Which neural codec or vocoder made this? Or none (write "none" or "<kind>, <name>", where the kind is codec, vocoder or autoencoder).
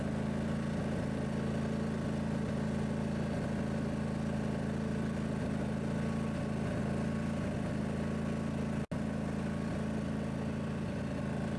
none